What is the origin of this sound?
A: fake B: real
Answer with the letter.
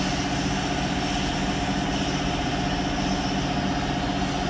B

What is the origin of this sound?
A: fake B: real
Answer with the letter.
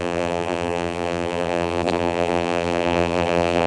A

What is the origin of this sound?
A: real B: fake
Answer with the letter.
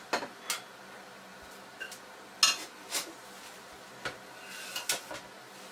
A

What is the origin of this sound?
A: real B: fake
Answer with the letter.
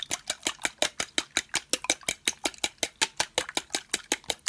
A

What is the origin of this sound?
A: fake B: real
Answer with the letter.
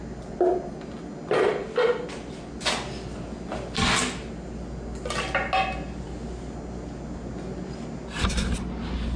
B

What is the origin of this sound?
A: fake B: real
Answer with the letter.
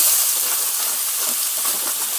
B